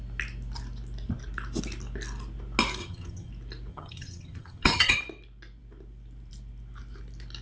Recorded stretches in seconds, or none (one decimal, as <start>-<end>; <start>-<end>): 0.0-2.8; 3.3-3.7; 5.0-7.4